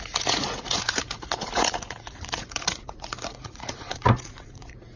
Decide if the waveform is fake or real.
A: fake